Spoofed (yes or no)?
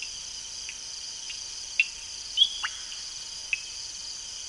no